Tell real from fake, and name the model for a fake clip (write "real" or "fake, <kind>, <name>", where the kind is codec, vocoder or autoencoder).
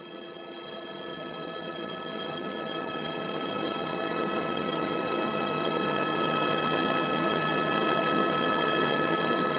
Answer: fake, vocoder, HiFi-GAN